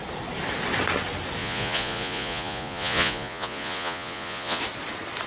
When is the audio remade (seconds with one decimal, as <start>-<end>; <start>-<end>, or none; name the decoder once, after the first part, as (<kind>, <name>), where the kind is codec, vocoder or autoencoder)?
1.4-4.6 (vocoder, Vocos)